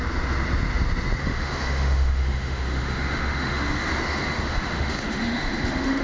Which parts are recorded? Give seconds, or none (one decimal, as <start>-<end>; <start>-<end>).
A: 0.0-1.2; 3.6-4.1